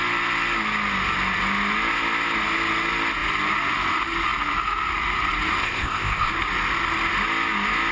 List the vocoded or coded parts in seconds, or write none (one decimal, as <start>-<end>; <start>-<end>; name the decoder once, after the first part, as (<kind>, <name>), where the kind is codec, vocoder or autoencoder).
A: 5.6-6.3 (codec, ZipCodec)